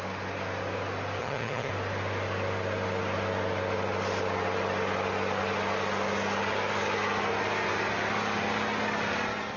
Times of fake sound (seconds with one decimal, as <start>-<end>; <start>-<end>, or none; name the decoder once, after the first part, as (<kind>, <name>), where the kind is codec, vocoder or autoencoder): 1.2-1.7 (vocoder, HiFi-GAN)